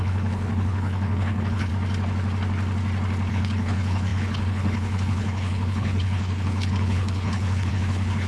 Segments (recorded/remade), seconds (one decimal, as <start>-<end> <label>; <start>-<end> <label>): 0.0-1.7 remade; 1.7-3.3 recorded; 3.3-8.3 remade